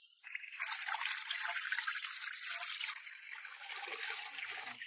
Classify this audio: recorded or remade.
remade